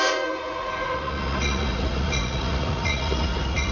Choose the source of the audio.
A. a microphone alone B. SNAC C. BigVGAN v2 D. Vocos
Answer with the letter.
D